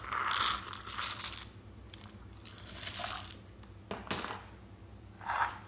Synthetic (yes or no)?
no